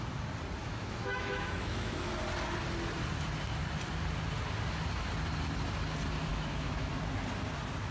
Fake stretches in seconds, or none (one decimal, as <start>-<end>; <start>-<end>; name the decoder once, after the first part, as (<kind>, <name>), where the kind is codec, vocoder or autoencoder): 0.6-2.1 (autoencoder, DAC-VAE); 6.3-6.9